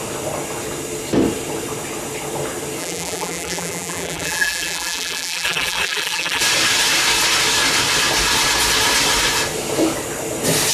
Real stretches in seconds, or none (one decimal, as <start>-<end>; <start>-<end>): 0.0-2.8; 6.4-10.7